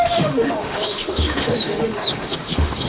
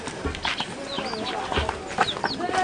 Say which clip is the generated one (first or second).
first